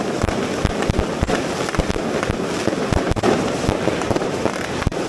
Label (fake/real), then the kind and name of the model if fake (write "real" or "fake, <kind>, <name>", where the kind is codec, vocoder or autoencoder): real